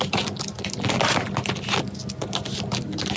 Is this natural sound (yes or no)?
yes